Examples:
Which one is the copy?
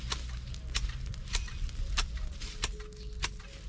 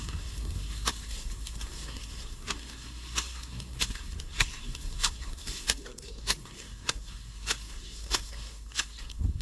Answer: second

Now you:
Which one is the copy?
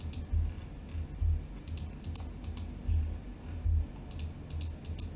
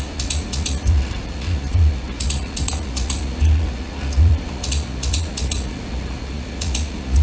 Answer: second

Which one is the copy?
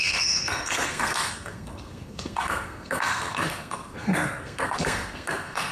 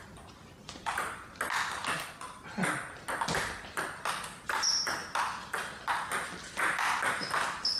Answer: first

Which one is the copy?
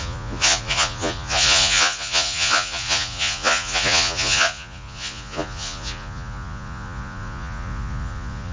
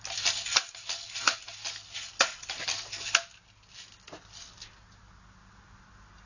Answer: first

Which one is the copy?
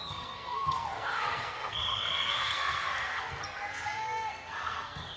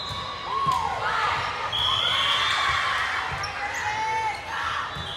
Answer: first